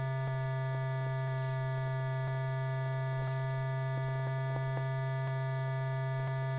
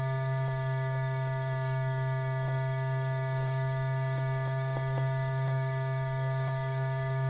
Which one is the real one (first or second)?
first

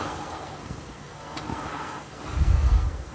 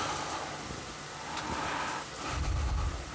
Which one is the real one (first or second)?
second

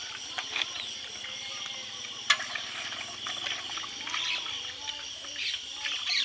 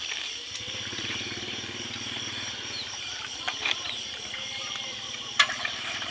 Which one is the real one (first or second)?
first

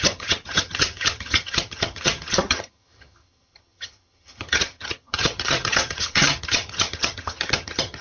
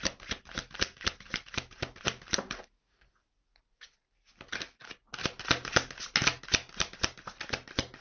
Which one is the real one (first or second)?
second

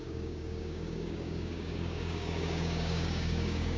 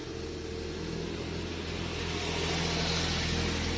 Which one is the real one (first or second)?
second